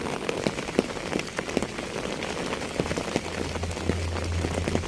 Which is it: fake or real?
real